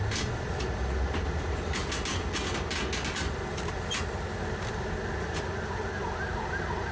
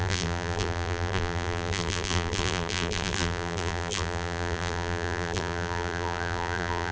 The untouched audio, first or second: first